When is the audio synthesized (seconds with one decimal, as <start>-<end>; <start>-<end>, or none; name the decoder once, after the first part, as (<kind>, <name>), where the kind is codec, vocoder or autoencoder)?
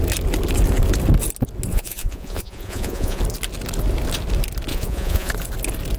1.7-3.2 (vocoder, Vocos); 4.7-5.3